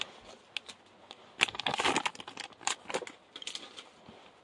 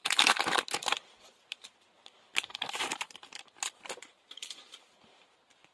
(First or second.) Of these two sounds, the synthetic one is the second